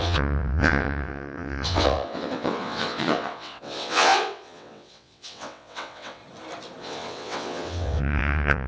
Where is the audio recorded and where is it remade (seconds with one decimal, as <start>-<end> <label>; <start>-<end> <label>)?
0.0-6.2 remade; 6.2-6.8 recorded; 6.8-8.7 remade